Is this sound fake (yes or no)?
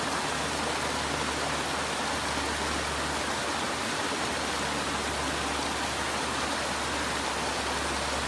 no